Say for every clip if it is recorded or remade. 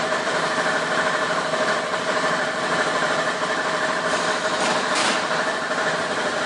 remade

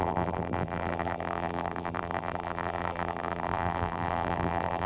remade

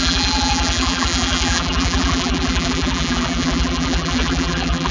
remade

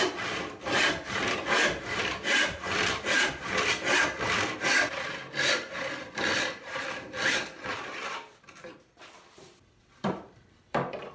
remade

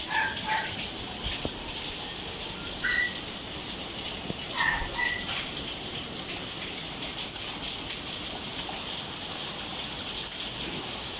remade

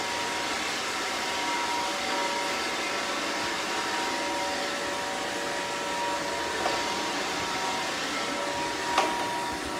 recorded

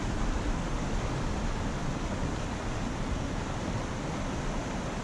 recorded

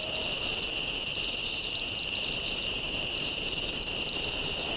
remade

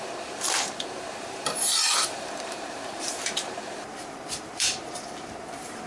remade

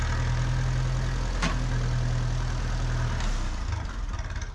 recorded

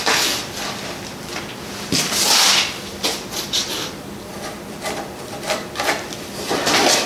remade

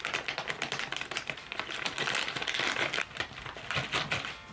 recorded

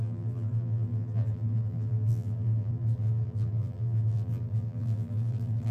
remade